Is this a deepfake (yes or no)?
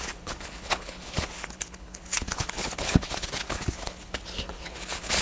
yes